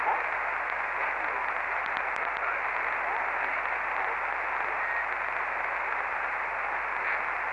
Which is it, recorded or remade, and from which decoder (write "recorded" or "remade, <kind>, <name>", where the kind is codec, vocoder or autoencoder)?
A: recorded